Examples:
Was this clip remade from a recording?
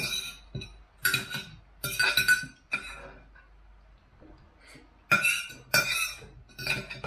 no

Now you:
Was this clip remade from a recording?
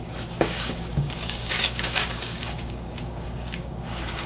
yes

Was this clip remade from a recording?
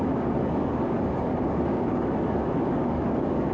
yes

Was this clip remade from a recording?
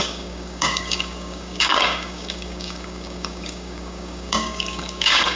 yes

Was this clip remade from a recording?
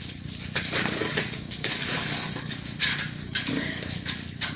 yes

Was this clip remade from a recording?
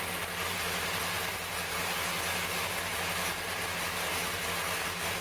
no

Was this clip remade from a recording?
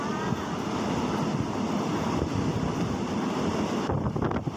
no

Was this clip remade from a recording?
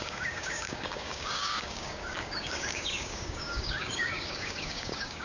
yes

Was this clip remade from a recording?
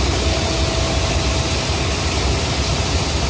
no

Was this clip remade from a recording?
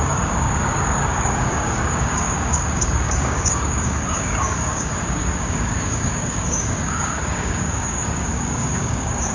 yes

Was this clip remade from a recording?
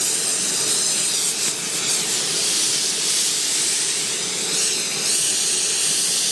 no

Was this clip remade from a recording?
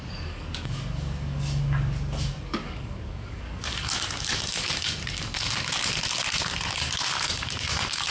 yes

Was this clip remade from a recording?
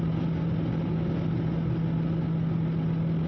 no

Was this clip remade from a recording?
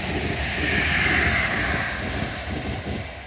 no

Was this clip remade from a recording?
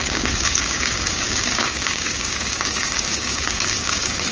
yes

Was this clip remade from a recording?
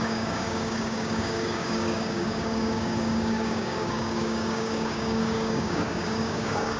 yes